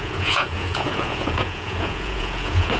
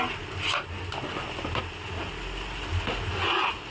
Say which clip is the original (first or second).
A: second